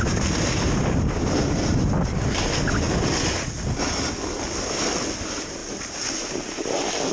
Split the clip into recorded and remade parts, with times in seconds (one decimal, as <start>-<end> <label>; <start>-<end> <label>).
0.0-7.1 recorded